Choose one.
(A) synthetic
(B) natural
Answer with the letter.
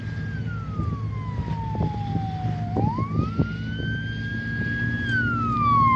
B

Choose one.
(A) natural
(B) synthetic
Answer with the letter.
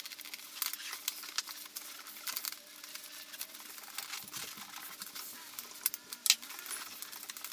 A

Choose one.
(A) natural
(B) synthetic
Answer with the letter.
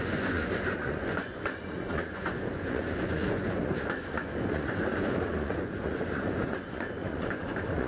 B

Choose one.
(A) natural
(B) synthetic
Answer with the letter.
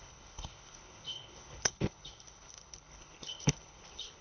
B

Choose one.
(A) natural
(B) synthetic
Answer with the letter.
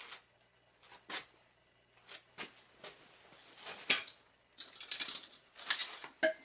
A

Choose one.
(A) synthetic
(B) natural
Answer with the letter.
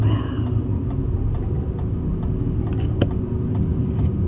B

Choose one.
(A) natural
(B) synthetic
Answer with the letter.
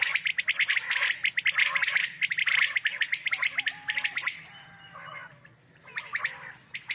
A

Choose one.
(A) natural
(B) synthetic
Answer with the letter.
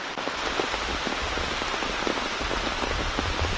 A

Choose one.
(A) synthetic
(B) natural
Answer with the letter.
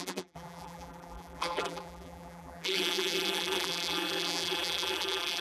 A